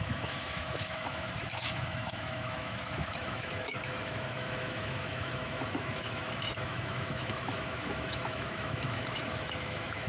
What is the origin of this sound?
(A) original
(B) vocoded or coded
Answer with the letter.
B